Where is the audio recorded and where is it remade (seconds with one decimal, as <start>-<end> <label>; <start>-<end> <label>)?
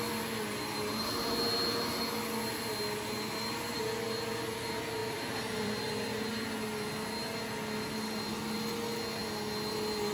0.0-5.0 recorded; 5.0-5.9 remade; 5.9-10.1 recorded